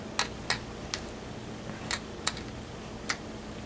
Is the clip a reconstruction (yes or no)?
no